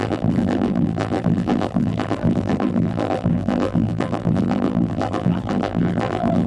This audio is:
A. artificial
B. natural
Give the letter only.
A